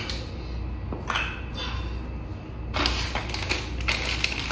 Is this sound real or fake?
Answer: real